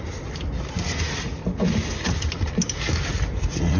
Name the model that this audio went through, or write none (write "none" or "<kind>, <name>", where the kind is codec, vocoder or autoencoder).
none